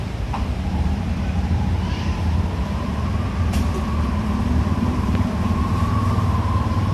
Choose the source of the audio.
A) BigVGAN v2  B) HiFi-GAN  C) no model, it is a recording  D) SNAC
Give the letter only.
A